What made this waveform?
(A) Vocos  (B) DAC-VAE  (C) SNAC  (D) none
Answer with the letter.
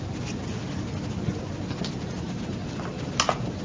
D